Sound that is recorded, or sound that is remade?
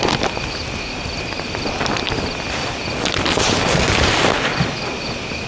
recorded